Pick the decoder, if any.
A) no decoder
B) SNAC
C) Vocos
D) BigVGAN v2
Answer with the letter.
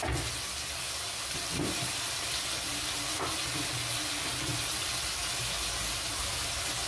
A